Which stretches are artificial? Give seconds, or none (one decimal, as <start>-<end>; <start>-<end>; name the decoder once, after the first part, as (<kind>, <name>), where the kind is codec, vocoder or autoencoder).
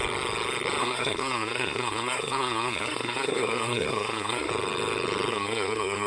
0.8-4.5 (codec, SNAC); 5.3-6.1